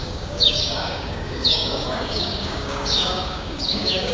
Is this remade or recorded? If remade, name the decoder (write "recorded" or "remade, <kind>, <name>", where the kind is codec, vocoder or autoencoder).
remade, codec, DAC